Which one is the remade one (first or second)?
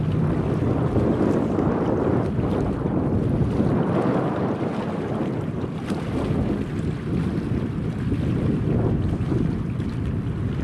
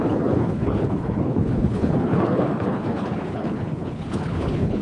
second